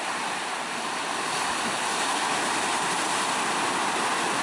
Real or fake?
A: real